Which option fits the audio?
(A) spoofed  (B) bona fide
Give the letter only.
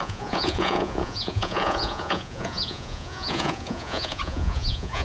A